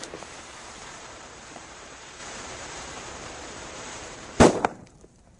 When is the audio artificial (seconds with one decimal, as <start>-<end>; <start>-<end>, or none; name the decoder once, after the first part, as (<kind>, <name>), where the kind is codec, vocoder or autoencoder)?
0.0-5.4 (vocoder, BigVGAN v2)